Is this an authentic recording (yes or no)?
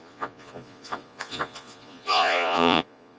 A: no